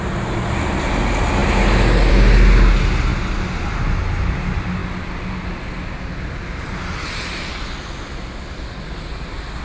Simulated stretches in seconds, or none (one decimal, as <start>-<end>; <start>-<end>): none